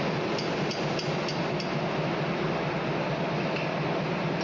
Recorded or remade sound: recorded